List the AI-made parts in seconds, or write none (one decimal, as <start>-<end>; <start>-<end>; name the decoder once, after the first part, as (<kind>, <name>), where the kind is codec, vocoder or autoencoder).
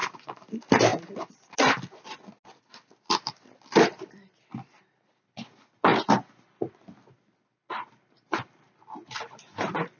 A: 0.0-5.9 (vocoder, BigVGAN v2); 7.9-10.0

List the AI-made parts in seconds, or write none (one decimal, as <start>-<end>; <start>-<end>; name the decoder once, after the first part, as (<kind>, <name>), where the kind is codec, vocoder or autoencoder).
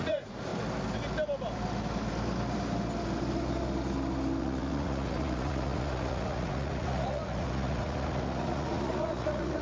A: 0.0-0.5 (vocoder, Vocos); 4.4-9.6